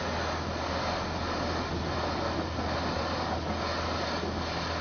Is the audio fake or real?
real